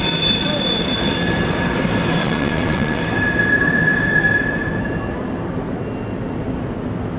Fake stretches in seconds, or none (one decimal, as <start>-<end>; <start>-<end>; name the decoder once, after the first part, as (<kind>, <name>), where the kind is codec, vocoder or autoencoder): 2.2-3.0 (vocoder, Vocos)